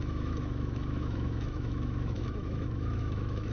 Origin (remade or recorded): remade